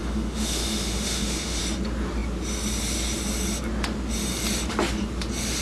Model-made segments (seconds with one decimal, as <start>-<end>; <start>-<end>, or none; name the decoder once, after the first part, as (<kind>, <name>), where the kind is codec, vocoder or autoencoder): 0.0-1.6 (autoencoder, DAC-VAE)